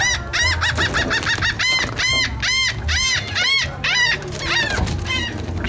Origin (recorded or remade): recorded